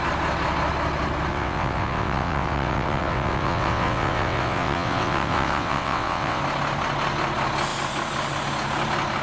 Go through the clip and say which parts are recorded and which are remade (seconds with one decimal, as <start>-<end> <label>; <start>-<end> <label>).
0.0-1.3 recorded; 1.3-6.4 remade; 6.4-9.2 recorded